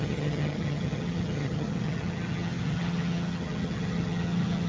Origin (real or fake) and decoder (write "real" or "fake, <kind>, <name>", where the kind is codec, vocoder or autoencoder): fake, vocoder, HiFi-GAN